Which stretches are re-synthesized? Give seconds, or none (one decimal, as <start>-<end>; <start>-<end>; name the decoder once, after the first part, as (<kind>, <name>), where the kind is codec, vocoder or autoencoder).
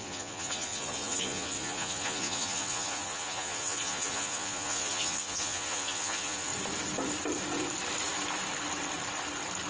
0.0-6.5 (vocoder, Vocos)